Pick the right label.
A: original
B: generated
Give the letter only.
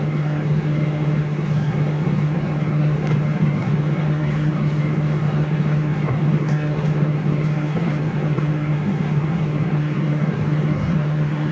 B